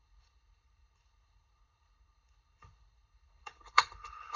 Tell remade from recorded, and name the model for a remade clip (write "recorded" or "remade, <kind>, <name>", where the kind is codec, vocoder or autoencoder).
remade, codec, HILCodec